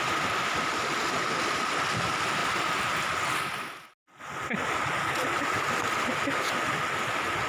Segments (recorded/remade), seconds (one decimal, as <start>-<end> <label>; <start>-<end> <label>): 0.0-7.5 recorded